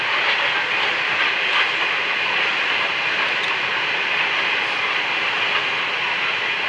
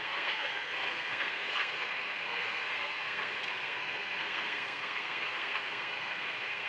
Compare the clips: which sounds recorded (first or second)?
first